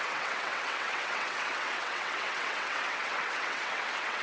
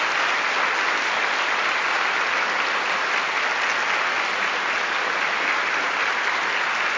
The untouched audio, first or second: second